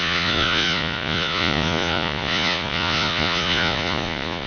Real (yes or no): no